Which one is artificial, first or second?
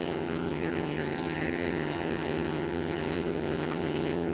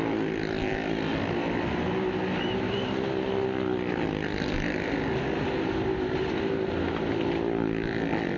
first